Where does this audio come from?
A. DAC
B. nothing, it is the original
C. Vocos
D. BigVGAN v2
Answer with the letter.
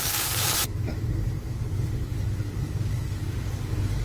A